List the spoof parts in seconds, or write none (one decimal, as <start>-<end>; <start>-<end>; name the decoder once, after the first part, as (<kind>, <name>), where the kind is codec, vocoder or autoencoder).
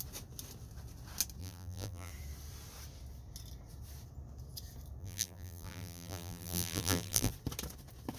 1.4-2.1 (vocoder, BigVGAN v2); 5.0-7.3